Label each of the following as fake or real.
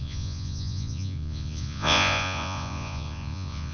fake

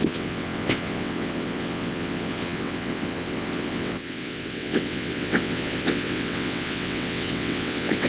fake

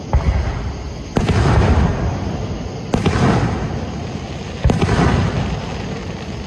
real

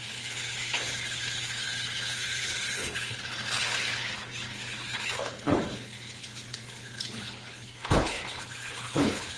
fake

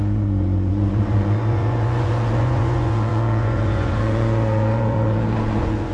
fake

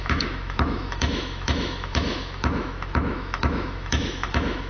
fake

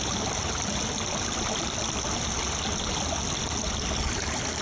real